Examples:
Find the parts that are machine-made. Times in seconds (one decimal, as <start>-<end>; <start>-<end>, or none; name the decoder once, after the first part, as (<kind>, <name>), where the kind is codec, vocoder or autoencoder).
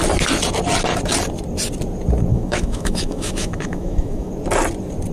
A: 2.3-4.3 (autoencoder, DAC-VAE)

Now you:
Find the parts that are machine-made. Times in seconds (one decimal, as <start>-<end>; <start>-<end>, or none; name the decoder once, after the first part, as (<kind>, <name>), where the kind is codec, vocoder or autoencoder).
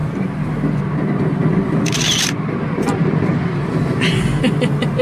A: 0.0-0.8 (vocoder, BigVGAN v2); 1.4-4.4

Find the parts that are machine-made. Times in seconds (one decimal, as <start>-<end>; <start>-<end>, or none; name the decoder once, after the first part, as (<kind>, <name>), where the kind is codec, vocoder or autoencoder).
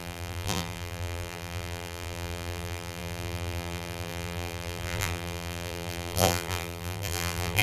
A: 0.0-7.6 (vocoder, BigVGAN v2)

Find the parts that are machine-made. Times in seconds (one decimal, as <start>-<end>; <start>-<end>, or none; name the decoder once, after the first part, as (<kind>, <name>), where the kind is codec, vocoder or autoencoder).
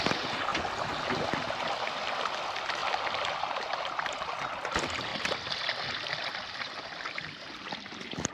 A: 2.8-4.2 (vocoder, BigVGAN v2); 5.1-6.2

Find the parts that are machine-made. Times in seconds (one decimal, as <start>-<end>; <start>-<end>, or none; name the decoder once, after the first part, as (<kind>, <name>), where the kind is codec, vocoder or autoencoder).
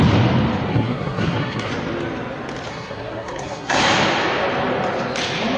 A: 0.7-1.7 (codec, SNAC); 2.7-3.8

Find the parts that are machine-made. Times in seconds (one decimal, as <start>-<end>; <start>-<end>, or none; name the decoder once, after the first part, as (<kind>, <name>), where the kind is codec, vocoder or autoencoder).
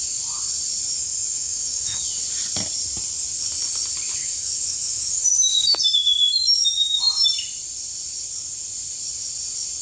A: 1.0-2.0 (autoencoder, DAC-VAE); 4.2-7.0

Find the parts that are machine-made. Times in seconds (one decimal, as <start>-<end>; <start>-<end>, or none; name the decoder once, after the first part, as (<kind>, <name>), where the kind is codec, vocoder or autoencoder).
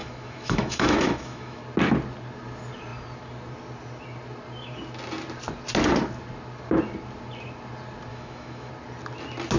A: 0.0-1.6 (autoencoder, DAC-VAE); 8.1-8.7